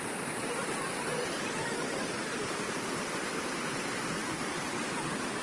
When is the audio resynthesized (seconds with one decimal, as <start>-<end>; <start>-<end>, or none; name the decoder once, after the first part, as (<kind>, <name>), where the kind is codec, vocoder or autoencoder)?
2.2-3.4 (vocoder, BigVGAN v2); 4.2-4.9

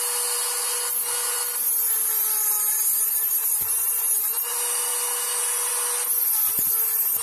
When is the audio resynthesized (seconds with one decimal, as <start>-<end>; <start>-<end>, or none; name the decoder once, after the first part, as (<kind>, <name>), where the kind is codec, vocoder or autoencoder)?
none

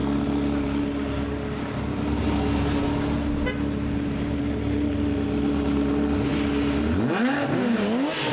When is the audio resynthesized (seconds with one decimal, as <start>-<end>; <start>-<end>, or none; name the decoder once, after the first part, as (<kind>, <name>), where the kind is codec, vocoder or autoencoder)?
none

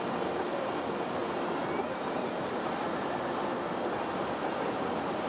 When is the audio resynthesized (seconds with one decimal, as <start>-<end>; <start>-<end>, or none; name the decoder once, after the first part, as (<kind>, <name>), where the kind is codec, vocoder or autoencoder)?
0.0-1.2 (vocoder, BigVGAN v2); 4.4-5.3